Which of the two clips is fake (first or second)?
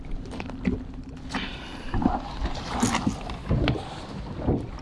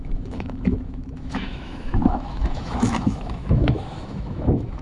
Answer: second